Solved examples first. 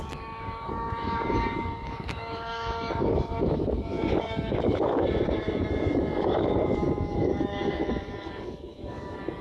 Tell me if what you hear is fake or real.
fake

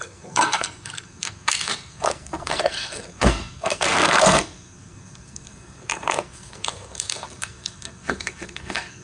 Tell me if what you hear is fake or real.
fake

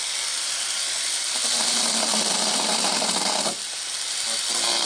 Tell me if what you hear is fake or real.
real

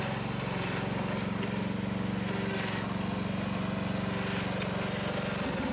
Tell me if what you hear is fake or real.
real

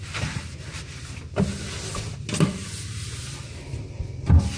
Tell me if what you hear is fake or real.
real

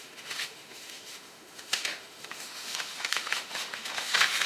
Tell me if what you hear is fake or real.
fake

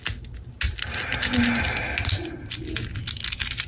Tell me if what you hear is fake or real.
real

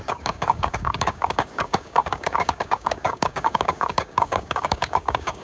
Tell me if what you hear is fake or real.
fake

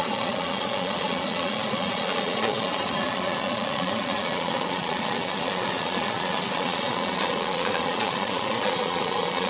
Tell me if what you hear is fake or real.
fake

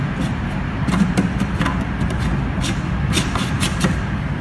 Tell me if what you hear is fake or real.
real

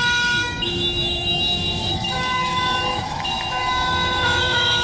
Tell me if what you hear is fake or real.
fake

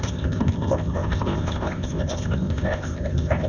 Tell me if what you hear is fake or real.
fake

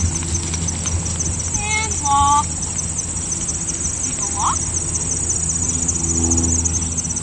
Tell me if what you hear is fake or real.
real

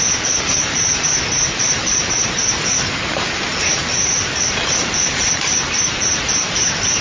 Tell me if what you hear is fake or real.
fake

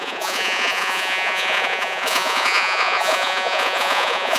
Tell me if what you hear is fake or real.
fake